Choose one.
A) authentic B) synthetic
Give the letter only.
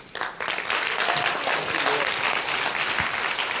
A